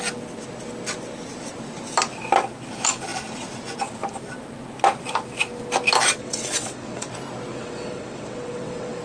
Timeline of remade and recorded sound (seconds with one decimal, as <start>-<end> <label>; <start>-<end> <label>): 0.0-6.2 recorded; 6.2-7.1 remade; 7.1-7.5 recorded; 7.5-9.0 remade